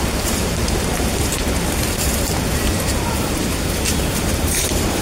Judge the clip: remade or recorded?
remade